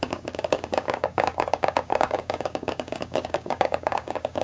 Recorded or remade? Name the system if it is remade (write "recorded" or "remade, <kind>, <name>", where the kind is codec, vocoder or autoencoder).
remade, codec, DAC